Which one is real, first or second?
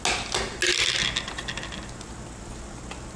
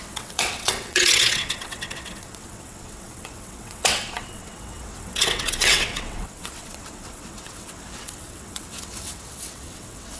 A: first